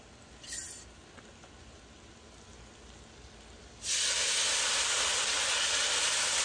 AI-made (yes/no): no